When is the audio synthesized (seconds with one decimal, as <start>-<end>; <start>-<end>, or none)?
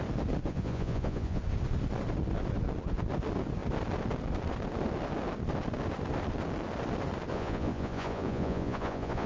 0.5-1.4; 7.3-9.3